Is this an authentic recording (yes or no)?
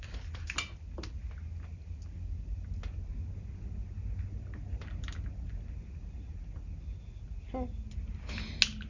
yes